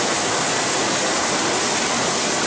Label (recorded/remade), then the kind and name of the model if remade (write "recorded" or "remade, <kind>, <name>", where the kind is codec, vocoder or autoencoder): recorded